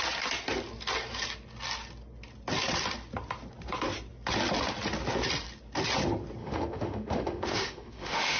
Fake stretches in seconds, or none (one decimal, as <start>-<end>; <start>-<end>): 6.4-8.4